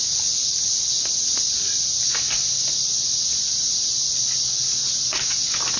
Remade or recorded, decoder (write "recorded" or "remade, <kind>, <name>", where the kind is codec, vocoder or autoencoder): recorded